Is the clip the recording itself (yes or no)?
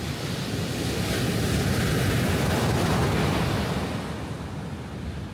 yes